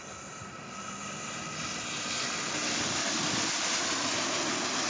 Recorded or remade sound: recorded